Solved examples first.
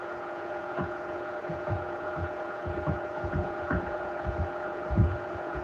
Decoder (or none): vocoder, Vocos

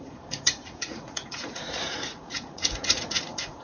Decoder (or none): vocoder, Vocos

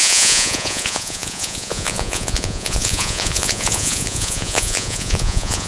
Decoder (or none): vocoder, Vocos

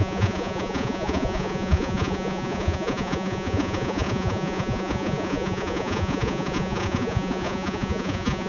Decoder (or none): vocoder, Vocos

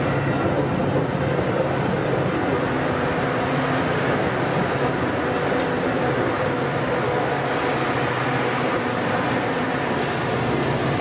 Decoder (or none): none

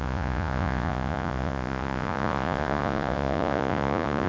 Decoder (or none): vocoder, Vocos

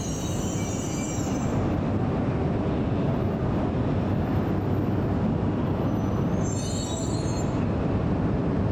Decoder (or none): none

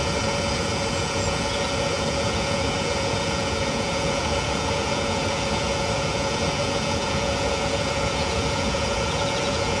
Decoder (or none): vocoder, Vocos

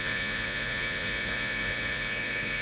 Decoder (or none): vocoder, Vocos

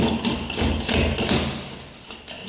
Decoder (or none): none